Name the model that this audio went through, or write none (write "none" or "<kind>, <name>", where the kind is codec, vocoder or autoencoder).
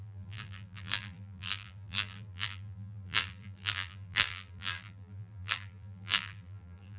vocoder, BigVGAN v2